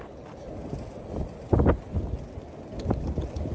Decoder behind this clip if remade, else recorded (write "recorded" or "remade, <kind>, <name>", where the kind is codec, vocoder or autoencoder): recorded